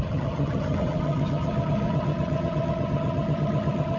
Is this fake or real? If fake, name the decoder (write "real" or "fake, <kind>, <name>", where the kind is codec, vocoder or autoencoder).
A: fake, vocoder, HiFi-GAN